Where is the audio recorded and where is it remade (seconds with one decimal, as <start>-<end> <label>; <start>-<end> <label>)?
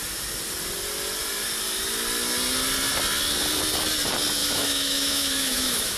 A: 0.0-4.4 recorded; 4.4-6.0 remade